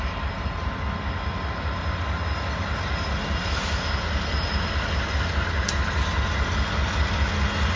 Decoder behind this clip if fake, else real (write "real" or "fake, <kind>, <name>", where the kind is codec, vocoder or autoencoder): real